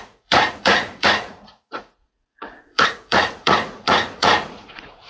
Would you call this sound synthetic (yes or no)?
yes